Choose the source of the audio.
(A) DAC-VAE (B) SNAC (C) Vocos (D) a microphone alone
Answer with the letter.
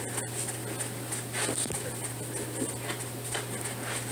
D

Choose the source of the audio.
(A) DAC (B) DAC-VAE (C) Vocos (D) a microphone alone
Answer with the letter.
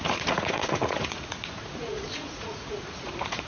C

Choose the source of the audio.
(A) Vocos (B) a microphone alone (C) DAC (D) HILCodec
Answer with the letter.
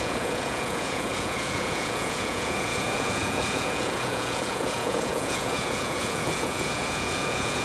A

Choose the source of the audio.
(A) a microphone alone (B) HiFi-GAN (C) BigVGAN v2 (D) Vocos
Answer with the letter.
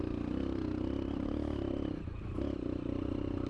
A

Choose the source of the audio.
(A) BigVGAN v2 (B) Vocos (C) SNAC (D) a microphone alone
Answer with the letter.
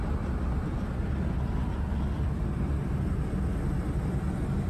D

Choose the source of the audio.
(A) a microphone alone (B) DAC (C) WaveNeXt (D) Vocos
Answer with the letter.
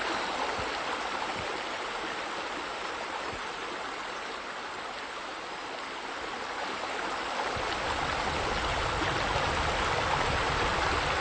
A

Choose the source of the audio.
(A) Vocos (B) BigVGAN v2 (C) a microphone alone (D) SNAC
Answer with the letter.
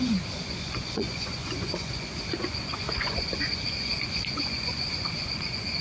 A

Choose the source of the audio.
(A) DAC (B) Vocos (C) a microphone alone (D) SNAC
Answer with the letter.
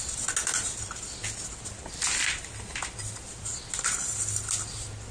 C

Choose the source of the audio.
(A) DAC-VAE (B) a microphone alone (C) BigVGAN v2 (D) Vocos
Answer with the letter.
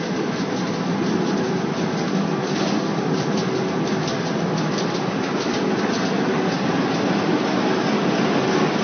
B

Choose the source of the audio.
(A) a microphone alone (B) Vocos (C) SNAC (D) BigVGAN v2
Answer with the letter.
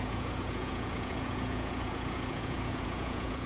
B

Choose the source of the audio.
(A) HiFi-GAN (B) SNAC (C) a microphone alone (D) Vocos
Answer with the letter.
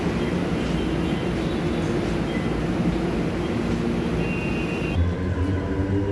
C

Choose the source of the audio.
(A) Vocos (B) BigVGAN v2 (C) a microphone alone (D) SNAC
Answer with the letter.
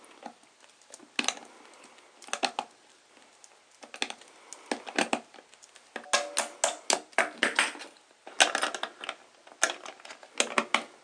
C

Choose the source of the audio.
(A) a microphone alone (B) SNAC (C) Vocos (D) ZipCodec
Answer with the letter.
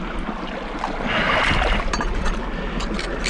A